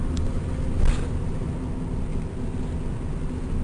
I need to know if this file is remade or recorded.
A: recorded